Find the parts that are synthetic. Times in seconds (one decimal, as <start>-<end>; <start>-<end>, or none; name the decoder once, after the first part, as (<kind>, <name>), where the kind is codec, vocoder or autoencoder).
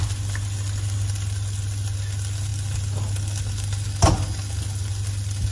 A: none